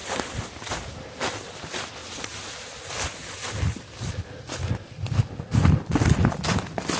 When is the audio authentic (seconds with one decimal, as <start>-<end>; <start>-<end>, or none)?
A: 0.0-7.0